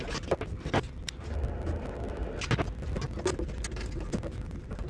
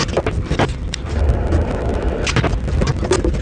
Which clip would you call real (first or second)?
first